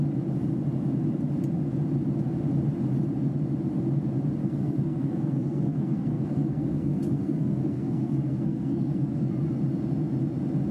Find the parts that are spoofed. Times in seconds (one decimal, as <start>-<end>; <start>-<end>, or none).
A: 4.4-9.3